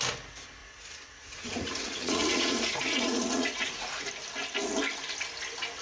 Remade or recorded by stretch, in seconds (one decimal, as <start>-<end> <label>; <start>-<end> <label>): 0.0-0.6 recorded; 0.6-4.1 remade; 4.1-5.8 recorded